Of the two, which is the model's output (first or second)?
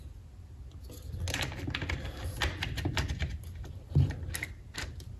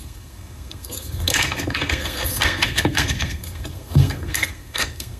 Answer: second